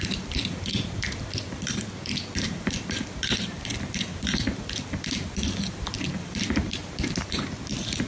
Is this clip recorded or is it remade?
recorded